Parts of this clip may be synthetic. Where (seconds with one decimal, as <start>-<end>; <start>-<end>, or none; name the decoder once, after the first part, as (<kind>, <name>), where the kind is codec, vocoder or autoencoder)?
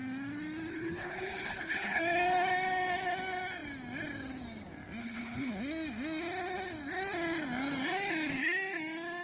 0.7-2.0 (codec, HILCodec); 5.0-5.5